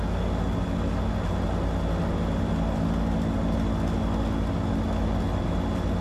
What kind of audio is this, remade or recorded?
recorded